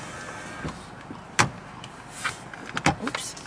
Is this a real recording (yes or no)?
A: yes